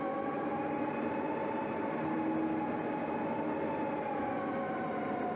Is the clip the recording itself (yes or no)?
yes